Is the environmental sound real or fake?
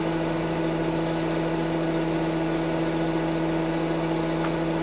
real